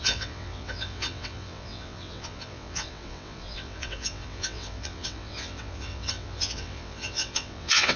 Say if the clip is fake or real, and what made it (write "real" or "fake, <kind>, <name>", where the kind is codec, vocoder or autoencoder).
fake, vocoder, WaveNeXt